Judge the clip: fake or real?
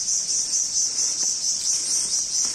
real